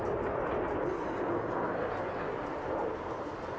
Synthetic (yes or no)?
no